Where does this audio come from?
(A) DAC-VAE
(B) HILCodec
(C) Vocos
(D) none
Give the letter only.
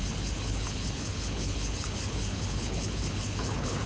B